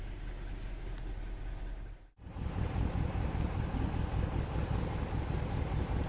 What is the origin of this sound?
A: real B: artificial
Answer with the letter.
A